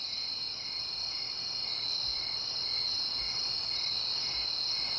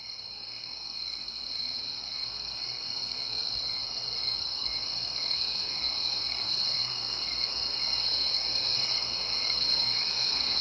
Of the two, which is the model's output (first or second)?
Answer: second